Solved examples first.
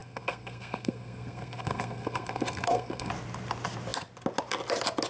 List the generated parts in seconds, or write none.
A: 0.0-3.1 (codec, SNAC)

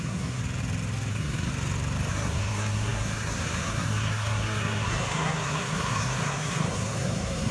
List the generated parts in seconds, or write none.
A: 0.0-0.4 (codec, SNAC); 1.1-1.5; 2.1-7.5